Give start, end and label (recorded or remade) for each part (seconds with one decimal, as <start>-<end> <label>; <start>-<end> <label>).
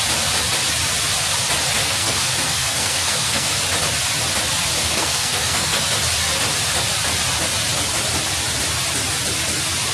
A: 0.0-1.8 recorded; 1.8-3.5 remade; 3.5-4.8 recorded; 4.8-5.8 remade; 5.8-9.9 recorded